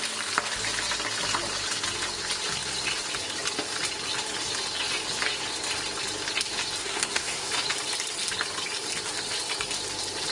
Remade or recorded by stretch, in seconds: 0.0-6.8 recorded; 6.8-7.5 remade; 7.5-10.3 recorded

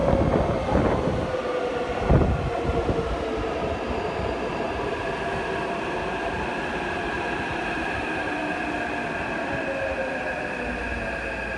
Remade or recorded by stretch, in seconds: 0.0-11.6 recorded

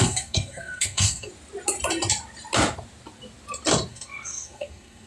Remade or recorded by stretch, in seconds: 0.0-1.3 remade; 1.3-3.9 recorded; 3.9-5.1 remade

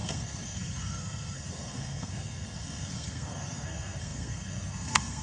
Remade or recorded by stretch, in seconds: 0.0-5.2 remade